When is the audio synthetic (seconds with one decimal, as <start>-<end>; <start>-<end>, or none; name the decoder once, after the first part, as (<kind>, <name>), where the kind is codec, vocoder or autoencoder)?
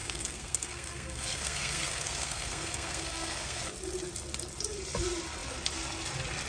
0.0-3.6 (codec, SNAC)